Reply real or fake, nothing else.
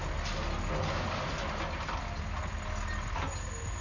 real